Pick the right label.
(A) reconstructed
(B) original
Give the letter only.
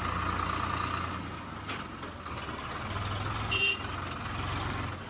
B